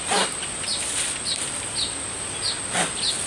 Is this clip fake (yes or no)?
no